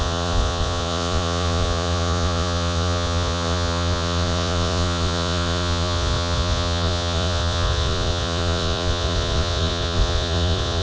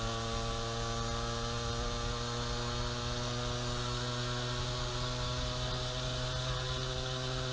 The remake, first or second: first